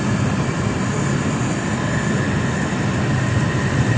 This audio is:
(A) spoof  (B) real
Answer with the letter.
B